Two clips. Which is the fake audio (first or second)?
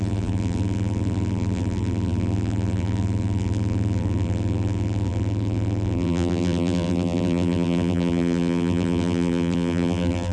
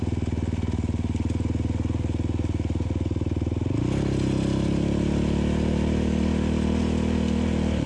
first